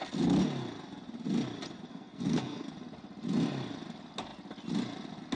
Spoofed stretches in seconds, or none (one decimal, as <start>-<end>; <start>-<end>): 1.9-2.7